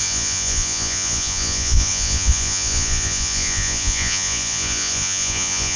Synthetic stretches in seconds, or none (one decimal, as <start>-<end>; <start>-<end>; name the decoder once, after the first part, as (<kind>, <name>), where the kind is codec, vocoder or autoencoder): 0.0-5.8 (vocoder, Vocos)